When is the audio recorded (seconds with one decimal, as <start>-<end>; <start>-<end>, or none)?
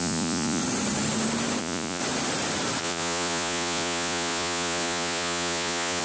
0.6-1.6; 2.0-2.8